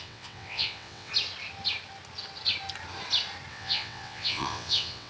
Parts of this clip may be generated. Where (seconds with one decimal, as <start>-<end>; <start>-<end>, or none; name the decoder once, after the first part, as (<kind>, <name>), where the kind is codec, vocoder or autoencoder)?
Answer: 0.0-1.1 (vocoder, WaveNeXt); 3.5-5.1